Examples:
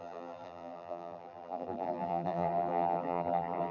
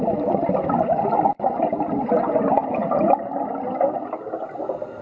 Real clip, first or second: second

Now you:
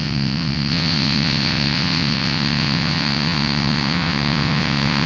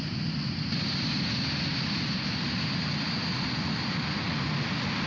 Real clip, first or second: second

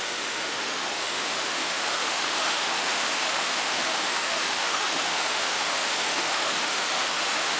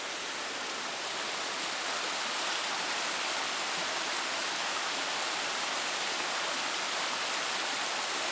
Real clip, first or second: second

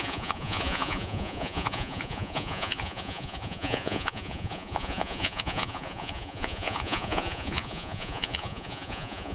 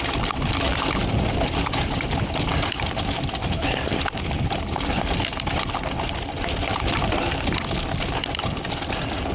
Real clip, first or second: second